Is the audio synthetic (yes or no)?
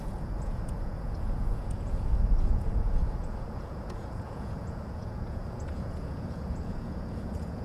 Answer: yes